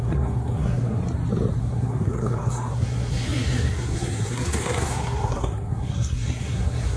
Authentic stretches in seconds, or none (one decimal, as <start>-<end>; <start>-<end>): 1.0-1.6